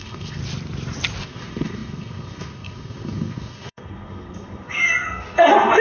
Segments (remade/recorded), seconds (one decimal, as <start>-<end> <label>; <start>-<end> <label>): 0.0-0.4 remade; 0.4-1.2 recorded; 1.2-5.8 remade